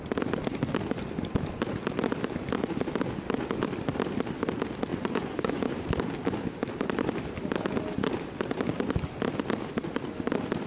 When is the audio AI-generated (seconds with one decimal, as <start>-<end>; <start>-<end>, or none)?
4.9-5.6